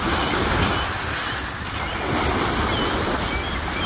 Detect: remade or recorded recorded